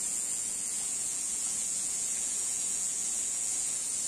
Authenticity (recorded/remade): remade